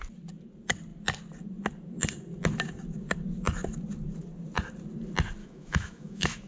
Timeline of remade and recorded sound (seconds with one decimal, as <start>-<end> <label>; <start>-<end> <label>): 0.0-5.4 recorded; 5.4-6.5 remade

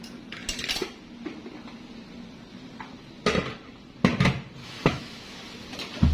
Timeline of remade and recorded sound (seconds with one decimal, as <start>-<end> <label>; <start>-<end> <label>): 0.0-4.6 recorded; 4.6-5.4 remade; 5.4-6.1 recorded

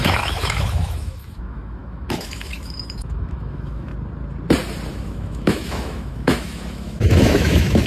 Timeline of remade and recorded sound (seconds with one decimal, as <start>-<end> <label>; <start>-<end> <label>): 0.0-3.9 remade; 3.9-4.9 recorded; 4.9-7.9 remade

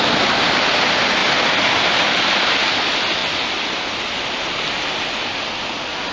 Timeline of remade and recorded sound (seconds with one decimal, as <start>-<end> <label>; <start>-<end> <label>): 0.0-6.1 recorded

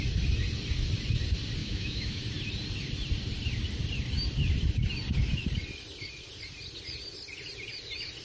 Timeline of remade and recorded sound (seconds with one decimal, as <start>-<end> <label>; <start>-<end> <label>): 0.0-1.6 recorded; 1.6-2.2 remade; 2.2-8.2 recorded

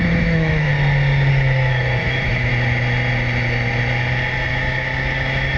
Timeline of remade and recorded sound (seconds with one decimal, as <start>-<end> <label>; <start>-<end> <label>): 0.0-0.7 remade; 0.7-1.3 recorded; 1.3-2.5 remade; 2.5-4.5 recorded; 4.5-5.6 remade

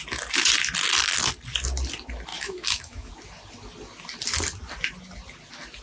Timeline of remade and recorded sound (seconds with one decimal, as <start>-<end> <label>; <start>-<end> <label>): 0.0-2.3 recorded; 2.3-3.1 remade; 3.1-5.8 recorded

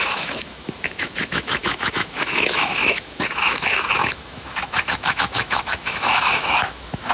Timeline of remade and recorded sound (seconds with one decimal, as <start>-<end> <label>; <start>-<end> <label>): 0.0-7.1 remade